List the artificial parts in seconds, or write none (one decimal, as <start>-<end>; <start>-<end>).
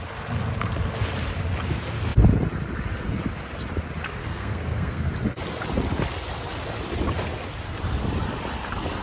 4.2-5.1